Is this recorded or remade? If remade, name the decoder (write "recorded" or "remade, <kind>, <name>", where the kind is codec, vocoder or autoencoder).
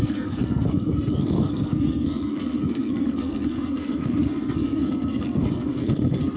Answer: remade, codec, SNAC